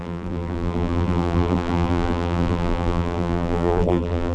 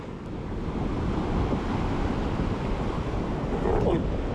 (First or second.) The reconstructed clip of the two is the first